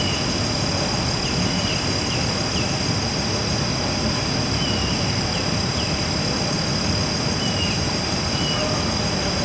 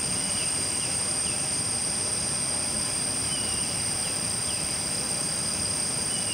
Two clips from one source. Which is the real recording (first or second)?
first